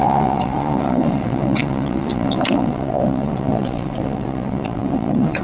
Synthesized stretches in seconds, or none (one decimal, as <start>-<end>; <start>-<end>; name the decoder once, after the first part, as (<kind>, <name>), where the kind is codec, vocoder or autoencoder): 0.0-5.4 (vocoder, WaveNeXt)